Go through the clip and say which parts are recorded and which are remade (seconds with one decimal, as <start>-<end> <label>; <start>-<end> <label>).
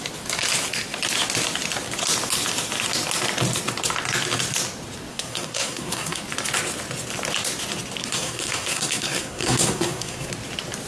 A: 0.0-5.1 recorded; 5.1-6.2 remade; 6.2-8.0 recorded; 8.0-10.3 remade; 10.3-10.9 recorded